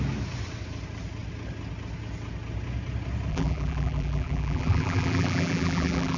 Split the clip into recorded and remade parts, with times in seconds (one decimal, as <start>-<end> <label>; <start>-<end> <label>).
0.0-3.3 recorded; 3.3-6.2 remade